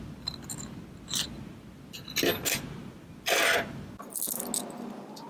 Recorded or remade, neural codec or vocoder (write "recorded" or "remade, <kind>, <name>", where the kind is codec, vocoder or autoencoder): recorded